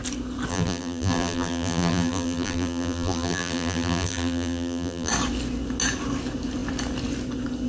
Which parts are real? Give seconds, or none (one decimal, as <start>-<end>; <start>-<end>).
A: 0.0-0.5; 5.1-7.7